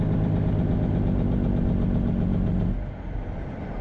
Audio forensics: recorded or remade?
recorded